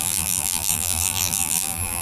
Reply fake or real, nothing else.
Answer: fake